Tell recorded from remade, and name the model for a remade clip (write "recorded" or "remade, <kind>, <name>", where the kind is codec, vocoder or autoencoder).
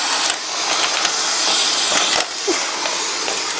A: recorded